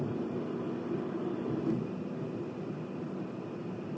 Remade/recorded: recorded